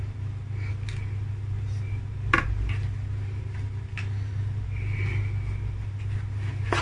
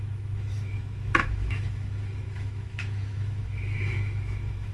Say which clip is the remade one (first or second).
second